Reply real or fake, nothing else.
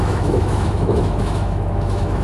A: fake